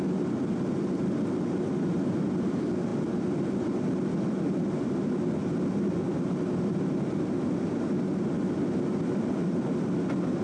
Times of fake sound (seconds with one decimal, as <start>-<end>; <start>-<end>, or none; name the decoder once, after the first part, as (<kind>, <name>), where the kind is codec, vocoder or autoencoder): none